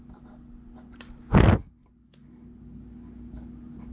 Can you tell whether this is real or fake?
real